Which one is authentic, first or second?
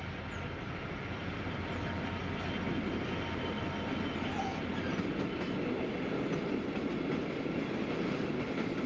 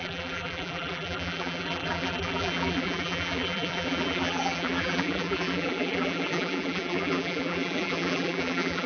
first